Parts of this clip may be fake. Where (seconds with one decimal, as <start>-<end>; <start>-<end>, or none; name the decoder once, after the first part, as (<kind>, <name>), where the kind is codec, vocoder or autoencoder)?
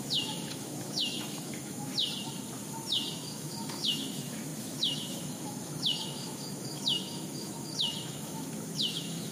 0.0-1.9 (autoencoder, DAC-VAE); 3.1-9.3